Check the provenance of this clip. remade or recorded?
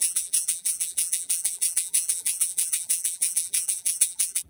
remade